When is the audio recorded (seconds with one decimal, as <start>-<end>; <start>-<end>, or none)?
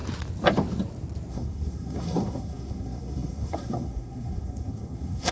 0.0-1.3